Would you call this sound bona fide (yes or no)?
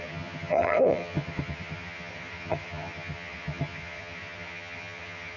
no